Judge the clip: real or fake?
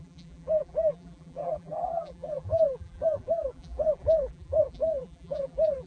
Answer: fake